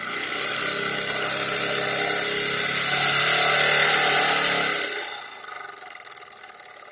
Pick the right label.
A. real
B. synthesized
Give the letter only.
A